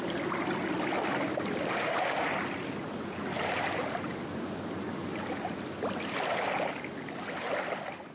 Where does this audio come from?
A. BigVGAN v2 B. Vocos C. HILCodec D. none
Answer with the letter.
D